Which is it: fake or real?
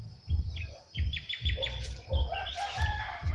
fake